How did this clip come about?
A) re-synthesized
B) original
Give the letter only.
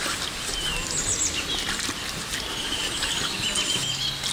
B